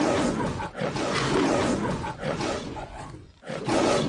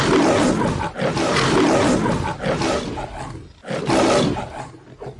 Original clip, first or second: second